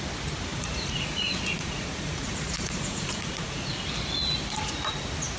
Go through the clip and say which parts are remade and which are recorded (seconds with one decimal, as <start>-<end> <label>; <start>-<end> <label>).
0.0-0.5 recorded; 0.5-3.7 remade; 3.7-5.4 recorded